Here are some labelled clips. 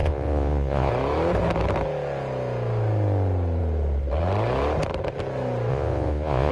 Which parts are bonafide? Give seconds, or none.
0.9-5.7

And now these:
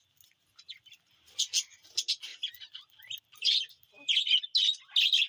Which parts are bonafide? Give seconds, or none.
0.0-5.3

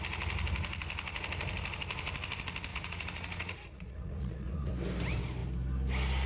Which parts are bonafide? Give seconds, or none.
0.0-2.7; 4.7-6.3